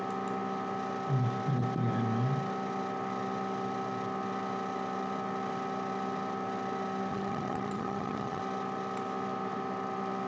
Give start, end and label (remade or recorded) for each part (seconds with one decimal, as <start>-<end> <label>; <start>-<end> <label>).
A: 0.0-7.1 recorded; 7.1-8.4 remade; 8.4-10.3 recorded